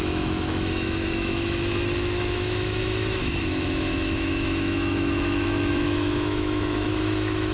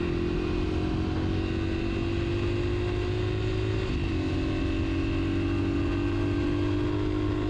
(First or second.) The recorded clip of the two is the second